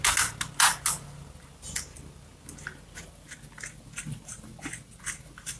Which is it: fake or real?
real